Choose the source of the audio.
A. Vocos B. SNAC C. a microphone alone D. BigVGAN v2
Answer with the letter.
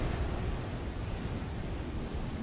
C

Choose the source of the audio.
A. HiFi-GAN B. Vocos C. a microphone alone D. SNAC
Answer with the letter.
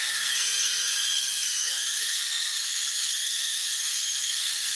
D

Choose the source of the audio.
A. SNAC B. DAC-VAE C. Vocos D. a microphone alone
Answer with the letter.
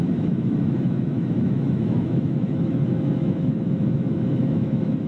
B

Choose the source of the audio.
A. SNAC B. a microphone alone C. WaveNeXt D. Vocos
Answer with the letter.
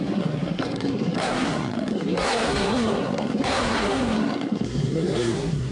A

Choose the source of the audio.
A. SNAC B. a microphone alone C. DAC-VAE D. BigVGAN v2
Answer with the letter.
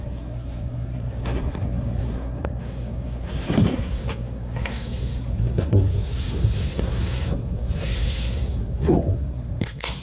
A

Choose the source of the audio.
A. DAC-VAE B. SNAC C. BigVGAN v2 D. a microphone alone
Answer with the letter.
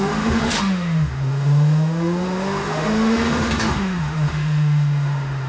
A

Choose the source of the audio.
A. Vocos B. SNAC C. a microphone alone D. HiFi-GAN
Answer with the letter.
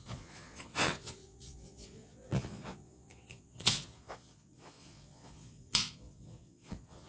A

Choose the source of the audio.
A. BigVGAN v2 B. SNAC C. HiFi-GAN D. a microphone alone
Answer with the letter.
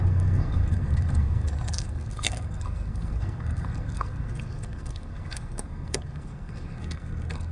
B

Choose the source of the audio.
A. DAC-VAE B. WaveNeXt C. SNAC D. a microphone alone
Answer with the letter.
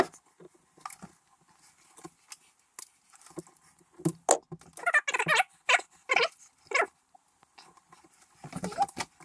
D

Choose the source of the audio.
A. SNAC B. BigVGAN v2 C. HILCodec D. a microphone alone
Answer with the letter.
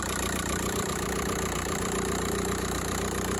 B